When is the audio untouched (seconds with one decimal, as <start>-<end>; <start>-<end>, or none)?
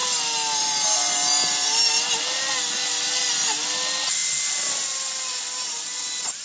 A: 0.0-6.4